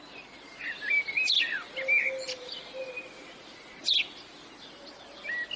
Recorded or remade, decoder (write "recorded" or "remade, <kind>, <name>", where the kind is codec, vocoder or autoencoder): recorded